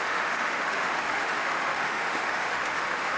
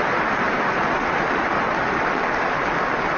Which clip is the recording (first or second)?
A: second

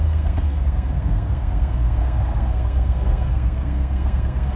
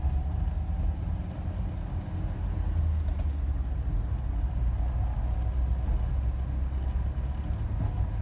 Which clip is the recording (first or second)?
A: second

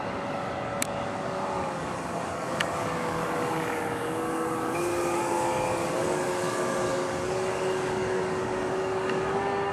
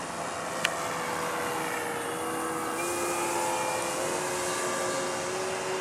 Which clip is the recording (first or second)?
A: second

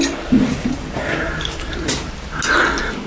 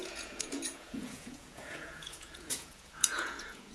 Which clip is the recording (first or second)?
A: first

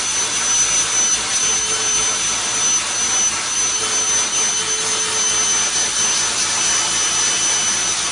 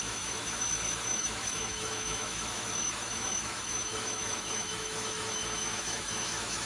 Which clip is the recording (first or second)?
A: first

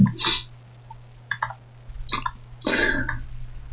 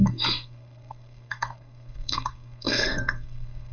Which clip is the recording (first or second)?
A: first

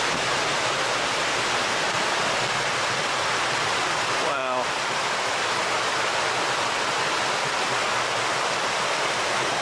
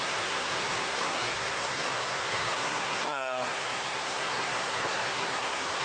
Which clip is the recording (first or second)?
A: first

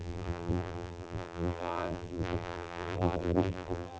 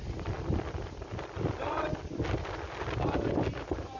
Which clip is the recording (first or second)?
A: second